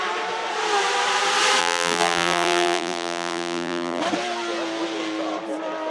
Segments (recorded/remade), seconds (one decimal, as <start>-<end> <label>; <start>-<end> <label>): 0.0-1.6 recorded; 1.6-4.0 remade; 4.0-5.9 recorded